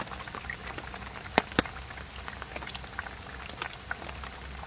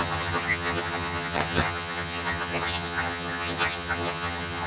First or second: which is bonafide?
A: first